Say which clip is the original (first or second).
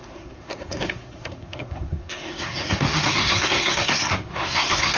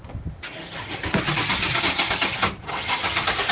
second